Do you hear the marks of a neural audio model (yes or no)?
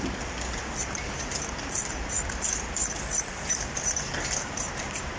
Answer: yes